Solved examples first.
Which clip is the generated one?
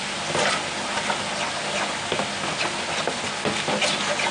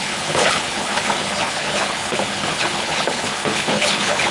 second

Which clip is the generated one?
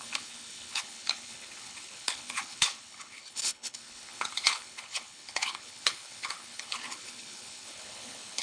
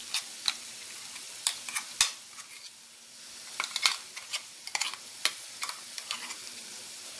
first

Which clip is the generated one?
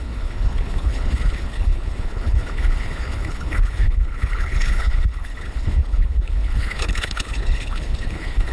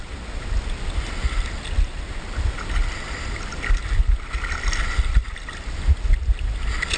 first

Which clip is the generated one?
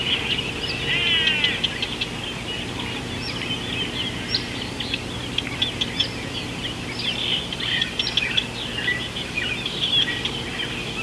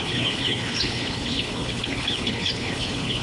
second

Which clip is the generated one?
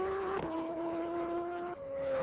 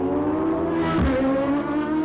first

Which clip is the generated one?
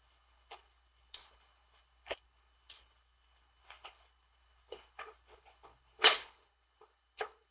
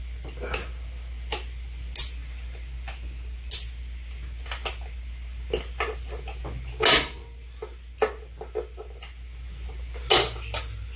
first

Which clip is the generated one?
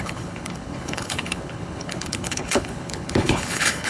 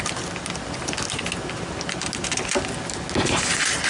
first